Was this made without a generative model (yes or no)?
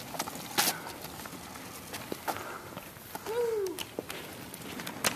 yes